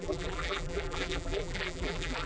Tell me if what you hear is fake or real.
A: fake